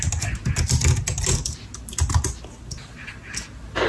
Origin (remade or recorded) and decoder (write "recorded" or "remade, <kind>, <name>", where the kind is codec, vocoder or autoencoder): recorded